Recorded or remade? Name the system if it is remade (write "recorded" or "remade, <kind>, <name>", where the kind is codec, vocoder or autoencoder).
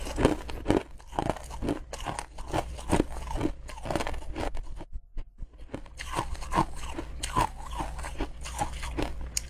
recorded